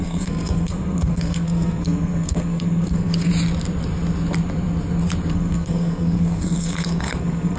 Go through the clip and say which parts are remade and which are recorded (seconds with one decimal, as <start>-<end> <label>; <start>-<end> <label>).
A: 0.0-3.3 remade; 3.3-5.3 recorded; 5.3-7.6 remade